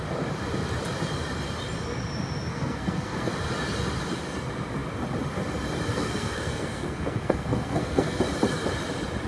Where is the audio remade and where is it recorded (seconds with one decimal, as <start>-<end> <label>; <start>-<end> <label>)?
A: 0.0-2.5 recorded; 2.5-3.3 remade; 3.3-5.9 recorded; 5.9-8.2 remade; 8.2-9.3 recorded